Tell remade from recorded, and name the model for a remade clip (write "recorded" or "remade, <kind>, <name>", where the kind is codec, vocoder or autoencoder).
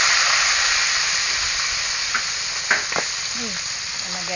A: recorded